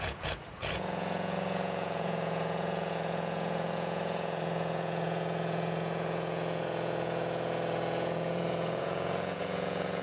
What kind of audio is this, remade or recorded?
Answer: remade